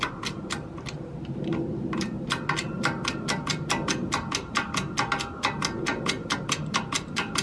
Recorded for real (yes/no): yes